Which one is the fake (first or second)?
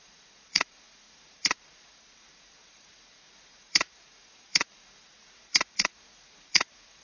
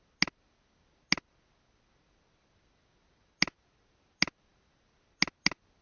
first